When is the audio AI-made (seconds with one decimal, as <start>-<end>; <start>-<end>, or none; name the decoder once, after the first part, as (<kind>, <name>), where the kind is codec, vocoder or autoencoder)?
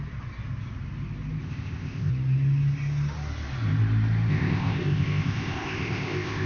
1.4-2.1 (codec, ZipCodec); 4.3-6.5